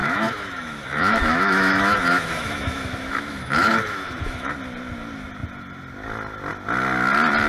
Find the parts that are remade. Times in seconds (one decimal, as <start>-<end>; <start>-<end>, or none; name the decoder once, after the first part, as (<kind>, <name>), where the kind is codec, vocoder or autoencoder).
0.0-4.5 (autoencoder, DAC-VAE)